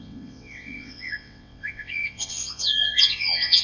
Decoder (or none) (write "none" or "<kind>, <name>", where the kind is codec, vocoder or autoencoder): vocoder, WaveNeXt